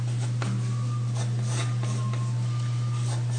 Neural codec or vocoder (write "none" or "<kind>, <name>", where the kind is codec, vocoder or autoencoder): none